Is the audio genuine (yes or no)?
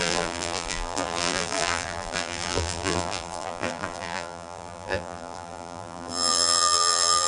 no